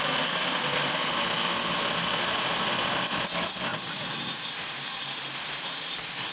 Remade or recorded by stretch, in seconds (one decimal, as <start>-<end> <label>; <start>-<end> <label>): 0.0-3.7 recorded; 3.7-6.3 remade